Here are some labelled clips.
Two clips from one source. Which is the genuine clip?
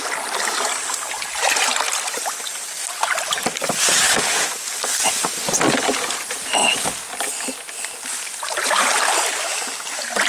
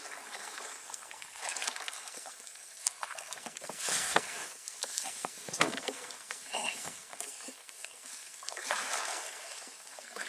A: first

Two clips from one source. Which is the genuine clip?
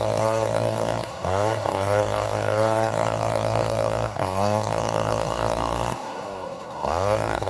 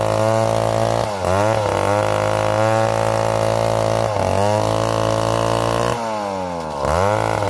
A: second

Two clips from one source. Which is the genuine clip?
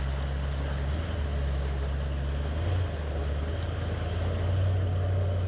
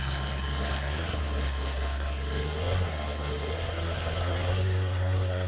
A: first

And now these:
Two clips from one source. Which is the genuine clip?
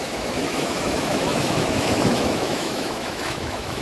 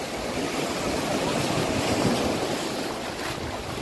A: second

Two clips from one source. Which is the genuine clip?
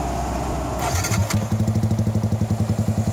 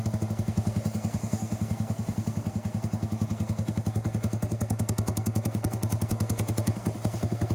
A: first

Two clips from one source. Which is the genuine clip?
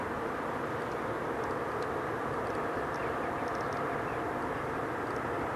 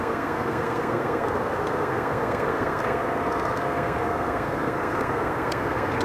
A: first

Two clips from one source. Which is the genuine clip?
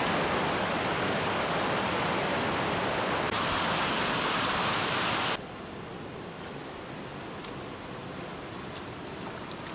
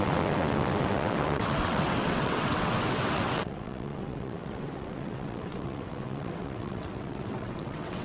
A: first